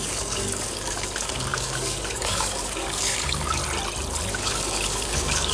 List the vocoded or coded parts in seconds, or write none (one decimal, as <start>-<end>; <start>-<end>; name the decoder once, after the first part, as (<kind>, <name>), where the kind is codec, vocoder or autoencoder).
0.0-3.6 (codec, DAC); 4.3-5.5